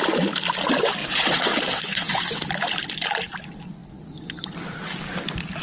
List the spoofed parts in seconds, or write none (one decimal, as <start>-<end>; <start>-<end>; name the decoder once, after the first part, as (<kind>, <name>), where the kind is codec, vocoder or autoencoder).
1.0-2.4 (vocoder, WaveNeXt)